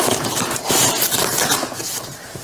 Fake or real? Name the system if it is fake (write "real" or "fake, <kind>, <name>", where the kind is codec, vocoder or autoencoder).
fake, vocoder, BigVGAN v2